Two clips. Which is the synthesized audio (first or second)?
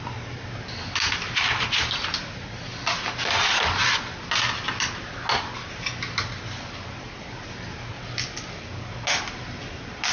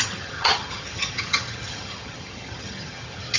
second